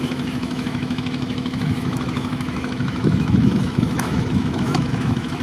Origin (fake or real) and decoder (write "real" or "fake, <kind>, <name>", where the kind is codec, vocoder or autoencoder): fake, autoencoder, DAC-VAE